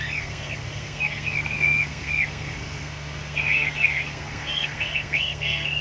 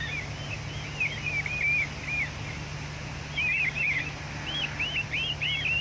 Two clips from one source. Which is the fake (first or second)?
first